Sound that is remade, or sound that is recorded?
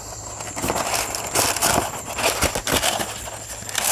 recorded